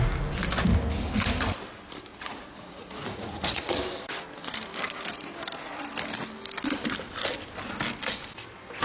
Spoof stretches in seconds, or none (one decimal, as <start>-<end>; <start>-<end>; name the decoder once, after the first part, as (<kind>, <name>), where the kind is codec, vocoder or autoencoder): 2.1-3.8 (vocoder, Vocos)